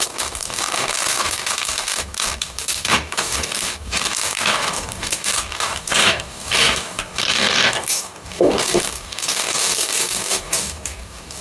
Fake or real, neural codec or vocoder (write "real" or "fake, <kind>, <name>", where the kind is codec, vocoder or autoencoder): fake, codec, DAC